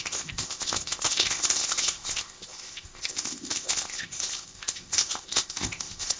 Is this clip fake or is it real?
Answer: fake